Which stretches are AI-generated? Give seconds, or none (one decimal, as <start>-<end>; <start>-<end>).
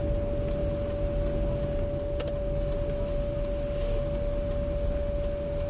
none